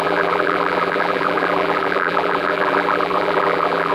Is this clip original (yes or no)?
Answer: no